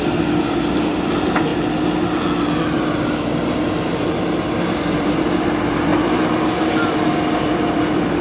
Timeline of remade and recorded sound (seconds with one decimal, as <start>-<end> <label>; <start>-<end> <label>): 0.0-1.5 remade; 1.5-4.1 recorded; 4.1-5.9 remade; 5.9-7.5 recorded; 7.5-8.2 remade